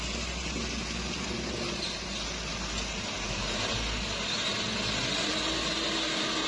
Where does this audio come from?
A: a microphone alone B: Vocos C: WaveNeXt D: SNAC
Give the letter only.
A